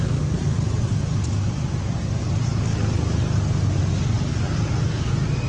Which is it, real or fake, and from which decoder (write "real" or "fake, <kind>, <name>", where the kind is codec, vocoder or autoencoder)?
real